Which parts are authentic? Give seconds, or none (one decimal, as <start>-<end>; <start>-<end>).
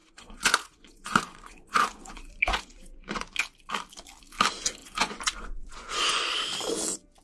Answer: 3.4-4.8; 6.3-7.2